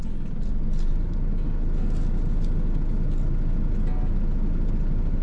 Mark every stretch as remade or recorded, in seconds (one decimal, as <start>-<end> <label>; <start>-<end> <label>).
0.0-5.2 recorded